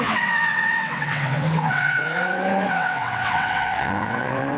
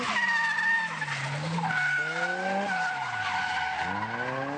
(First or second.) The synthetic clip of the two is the first